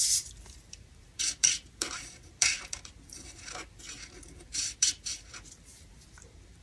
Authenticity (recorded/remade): remade